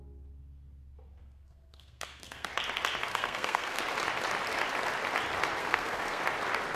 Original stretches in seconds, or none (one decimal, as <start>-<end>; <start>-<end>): 0.0-1.2; 2.5-3.1; 3.8-5.6; 6.2-6.8